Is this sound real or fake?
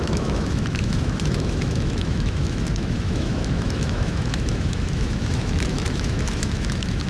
fake